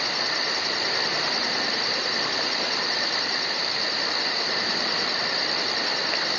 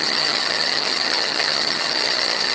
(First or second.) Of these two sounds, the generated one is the second